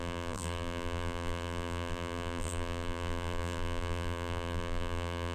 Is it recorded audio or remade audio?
remade